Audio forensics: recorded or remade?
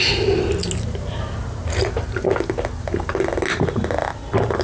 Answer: recorded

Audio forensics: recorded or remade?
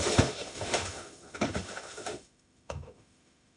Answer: remade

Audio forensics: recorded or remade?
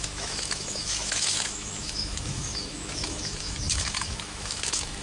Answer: remade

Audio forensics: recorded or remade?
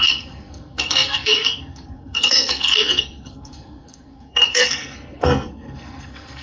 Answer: remade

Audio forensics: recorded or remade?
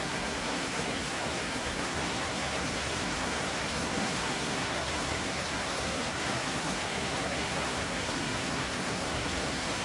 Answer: remade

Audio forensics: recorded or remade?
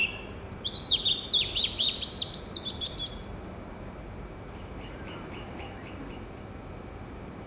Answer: remade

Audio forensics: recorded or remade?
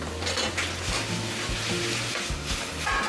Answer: recorded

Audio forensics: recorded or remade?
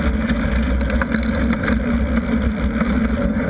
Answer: recorded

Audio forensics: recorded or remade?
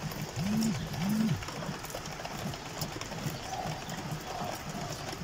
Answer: recorded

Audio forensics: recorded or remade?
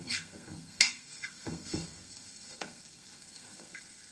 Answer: remade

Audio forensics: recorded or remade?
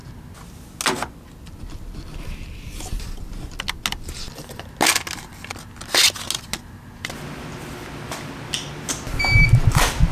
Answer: recorded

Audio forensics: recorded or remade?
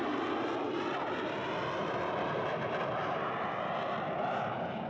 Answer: remade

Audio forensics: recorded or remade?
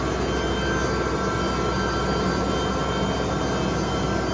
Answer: recorded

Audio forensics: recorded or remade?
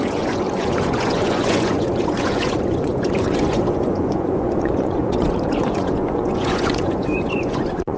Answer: remade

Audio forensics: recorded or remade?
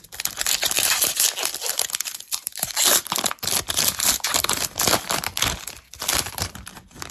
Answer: recorded